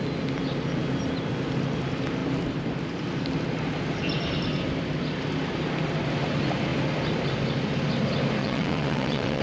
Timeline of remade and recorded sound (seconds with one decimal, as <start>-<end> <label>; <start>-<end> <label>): 0.0-8.4 recorded; 8.4-9.4 remade